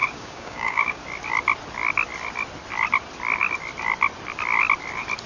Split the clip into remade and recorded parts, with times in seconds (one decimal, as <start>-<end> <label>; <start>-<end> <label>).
0.0-1.0 remade; 1.0-5.3 recorded